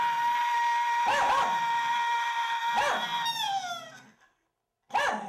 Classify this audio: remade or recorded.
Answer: recorded